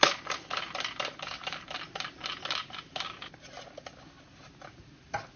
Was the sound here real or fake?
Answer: real